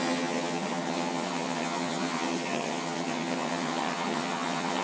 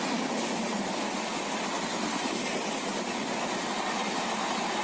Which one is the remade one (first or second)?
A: first